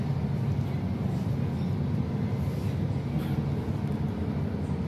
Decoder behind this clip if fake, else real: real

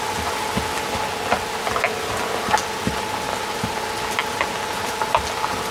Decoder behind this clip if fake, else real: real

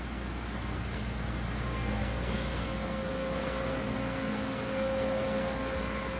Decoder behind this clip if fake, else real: fake, codec, SNAC